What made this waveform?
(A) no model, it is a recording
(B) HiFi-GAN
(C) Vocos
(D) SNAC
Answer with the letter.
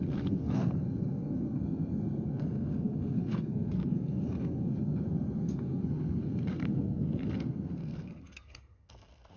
D